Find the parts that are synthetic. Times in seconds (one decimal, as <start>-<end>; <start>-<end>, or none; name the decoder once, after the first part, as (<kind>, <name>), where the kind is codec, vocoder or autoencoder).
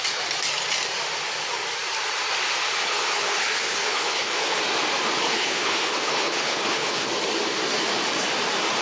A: 2.8-4.6 (codec, HILCodec); 5.2-7.1